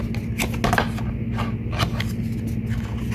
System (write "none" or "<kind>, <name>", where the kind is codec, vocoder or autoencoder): none